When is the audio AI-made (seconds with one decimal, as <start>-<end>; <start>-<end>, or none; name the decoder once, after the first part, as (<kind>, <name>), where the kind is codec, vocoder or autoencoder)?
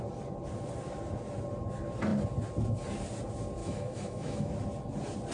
3.6-4.5 (autoencoder, DAC-VAE)